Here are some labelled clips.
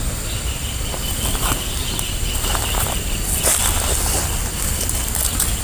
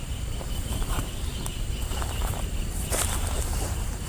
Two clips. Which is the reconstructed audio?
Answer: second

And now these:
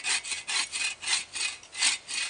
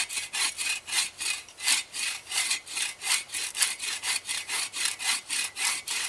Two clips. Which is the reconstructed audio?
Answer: second